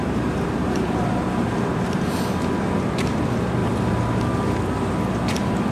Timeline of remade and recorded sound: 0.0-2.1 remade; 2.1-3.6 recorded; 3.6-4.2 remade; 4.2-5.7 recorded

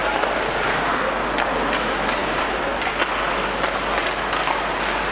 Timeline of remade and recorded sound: 0.0-0.9 remade; 0.9-2.2 recorded; 2.2-3.0 remade; 3.0-5.1 recorded

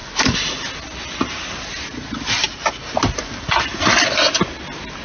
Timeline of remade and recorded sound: 0.0-5.0 recorded

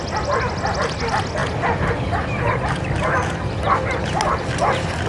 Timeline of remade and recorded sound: 0.0-5.1 recorded

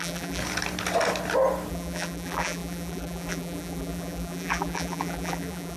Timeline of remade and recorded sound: 0.0-0.4 remade; 0.4-1.7 recorded; 1.7-5.8 remade

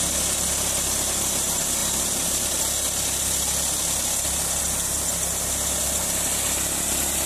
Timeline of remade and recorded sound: 0.0-1.8 recorded; 1.8-2.6 remade; 2.6-7.3 recorded

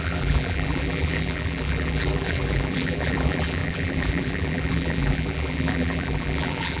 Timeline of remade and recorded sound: 0.0-6.8 remade

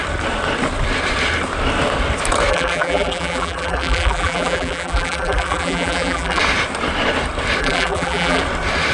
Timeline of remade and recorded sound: 0.0-2.5 recorded; 2.5-6.4 remade; 6.4-7.6 recorded; 7.6-8.4 remade; 8.4-8.9 recorded